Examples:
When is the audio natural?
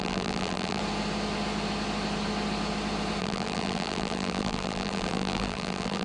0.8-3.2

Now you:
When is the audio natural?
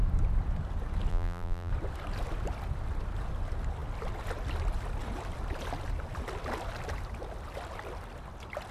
0.0-1.1; 1.7-8.7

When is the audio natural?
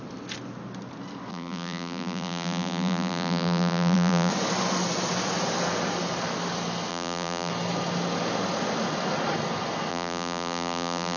0.0-1.3; 4.3-6.9; 7.5-9.9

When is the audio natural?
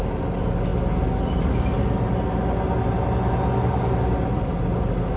0.0-5.2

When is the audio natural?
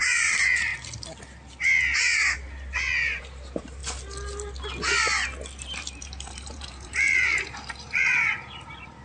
0.7-3.2; 3.8-5.6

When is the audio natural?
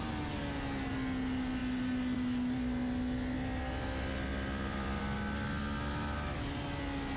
0.0-4.3; 5.0-7.2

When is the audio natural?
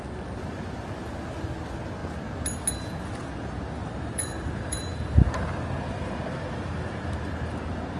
0.0-3.8; 4.9-8.0